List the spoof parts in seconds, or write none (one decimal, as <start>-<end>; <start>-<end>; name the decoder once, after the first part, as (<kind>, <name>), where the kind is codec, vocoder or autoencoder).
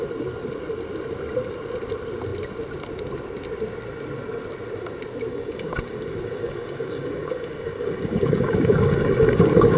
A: 5.3-9.8 (codec, DAC)